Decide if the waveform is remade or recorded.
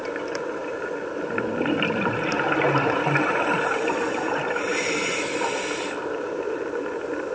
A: recorded